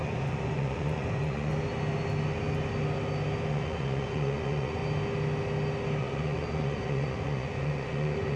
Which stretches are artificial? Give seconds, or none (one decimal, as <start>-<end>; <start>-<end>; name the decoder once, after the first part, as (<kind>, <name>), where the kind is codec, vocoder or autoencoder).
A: 0.0-1.5 (vocoder, Vocos); 3.5-4.8; 6.0-8.4